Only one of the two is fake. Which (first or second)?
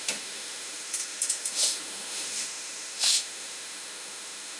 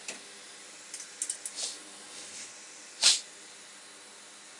first